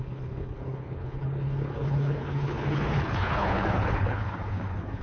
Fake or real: fake